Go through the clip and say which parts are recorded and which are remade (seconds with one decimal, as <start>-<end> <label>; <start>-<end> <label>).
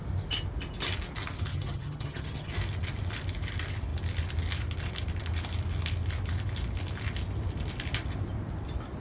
0.0-1.5 recorded; 1.5-2.5 remade; 2.5-9.0 recorded